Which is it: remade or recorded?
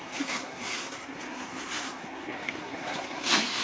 remade